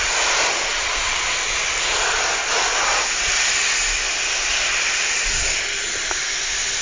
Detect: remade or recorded recorded